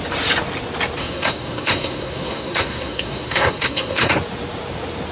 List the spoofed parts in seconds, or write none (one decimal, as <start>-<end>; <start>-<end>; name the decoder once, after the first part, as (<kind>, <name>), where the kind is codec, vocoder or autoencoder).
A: 1.0-4.1 (codec, SNAC)